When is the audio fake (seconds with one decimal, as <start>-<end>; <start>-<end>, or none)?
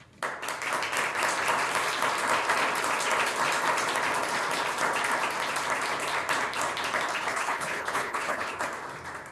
7.1-8.5